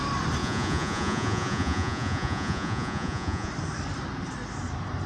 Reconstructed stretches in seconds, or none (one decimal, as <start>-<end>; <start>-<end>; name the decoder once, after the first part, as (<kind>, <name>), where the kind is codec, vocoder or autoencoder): 0.4-3.5 (vocoder, Vocos)